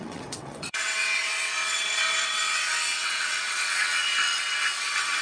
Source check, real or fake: fake